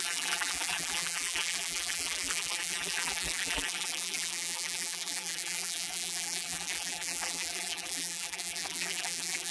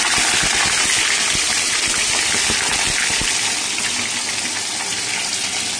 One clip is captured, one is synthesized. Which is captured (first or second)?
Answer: second